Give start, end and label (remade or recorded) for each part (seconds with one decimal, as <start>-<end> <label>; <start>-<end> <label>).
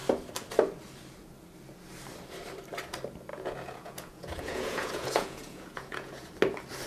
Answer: 0.0-3.3 recorded; 3.3-6.3 remade; 6.3-6.9 recorded